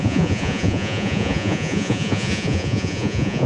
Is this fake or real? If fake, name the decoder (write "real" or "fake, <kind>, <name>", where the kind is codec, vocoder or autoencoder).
fake, vocoder, Vocos